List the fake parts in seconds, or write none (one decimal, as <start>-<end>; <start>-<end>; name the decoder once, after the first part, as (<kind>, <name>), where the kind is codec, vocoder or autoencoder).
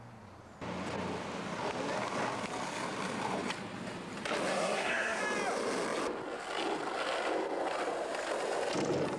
4.5-5.2 (codec, SNAC)